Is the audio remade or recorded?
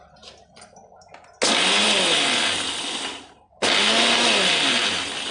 recorded